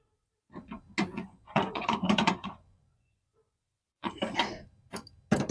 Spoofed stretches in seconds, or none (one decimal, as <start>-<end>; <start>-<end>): 1.1-4.1